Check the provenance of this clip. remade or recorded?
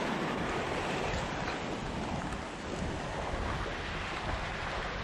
recorded